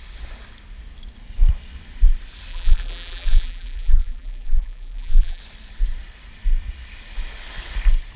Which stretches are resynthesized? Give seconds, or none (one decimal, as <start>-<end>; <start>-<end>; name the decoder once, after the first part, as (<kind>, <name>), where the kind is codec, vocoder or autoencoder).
2.5-5.4 (vocoder, BigVGAN v2)